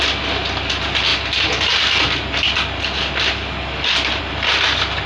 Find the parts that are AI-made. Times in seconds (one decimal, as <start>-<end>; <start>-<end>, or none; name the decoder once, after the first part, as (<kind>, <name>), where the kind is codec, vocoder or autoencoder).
none